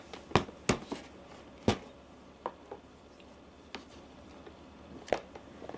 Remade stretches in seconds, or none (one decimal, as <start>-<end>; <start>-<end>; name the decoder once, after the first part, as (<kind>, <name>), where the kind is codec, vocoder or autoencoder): none